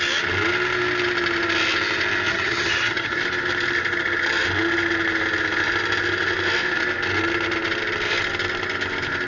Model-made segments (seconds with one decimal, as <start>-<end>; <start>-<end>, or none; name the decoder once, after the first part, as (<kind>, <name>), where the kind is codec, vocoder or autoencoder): 2.3-3.2 (vocoder, HiFi-GAN)